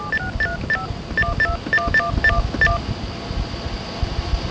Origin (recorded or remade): recorded